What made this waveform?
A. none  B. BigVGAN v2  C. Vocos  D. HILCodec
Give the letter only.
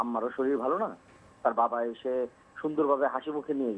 A